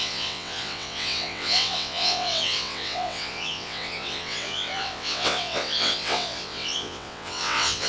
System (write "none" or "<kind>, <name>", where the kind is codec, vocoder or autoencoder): vocoder, WaveNeXt